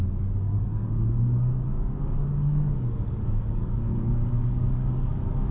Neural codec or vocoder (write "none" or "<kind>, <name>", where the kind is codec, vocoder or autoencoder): codec, DAC